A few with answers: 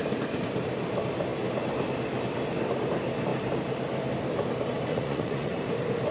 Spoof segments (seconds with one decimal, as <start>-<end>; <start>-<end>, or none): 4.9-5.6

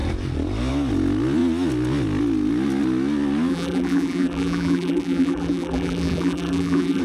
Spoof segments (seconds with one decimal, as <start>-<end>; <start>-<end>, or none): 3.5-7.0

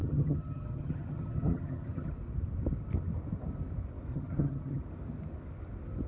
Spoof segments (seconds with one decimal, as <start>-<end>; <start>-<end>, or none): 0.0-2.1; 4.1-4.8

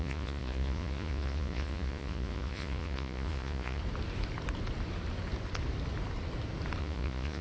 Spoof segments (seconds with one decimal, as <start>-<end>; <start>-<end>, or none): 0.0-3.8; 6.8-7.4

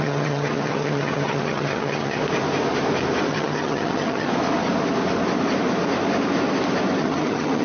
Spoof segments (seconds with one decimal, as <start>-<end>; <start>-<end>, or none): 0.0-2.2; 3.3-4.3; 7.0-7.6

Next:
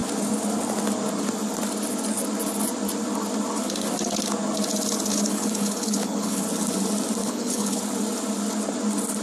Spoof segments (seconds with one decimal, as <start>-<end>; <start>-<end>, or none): 5.1-6.4; 7.2-7.8